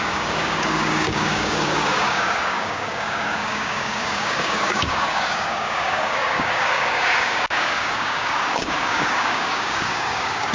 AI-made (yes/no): yes